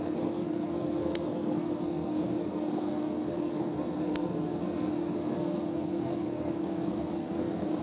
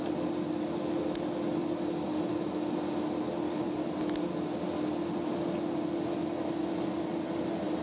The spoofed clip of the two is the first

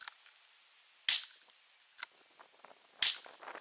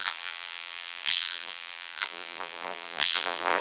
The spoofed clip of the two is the second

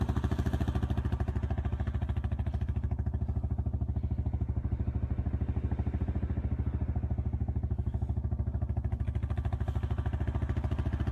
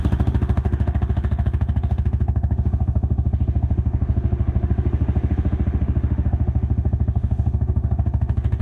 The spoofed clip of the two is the second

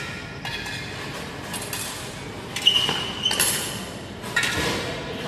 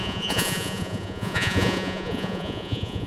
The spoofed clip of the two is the second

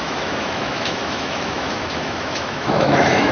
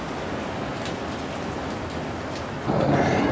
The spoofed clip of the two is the first